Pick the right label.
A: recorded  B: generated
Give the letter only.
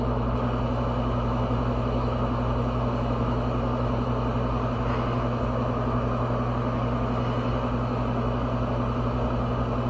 A